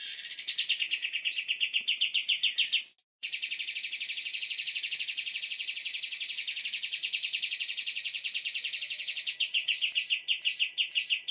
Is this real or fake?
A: real